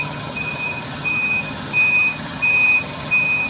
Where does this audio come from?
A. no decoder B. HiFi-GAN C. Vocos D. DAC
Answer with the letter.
B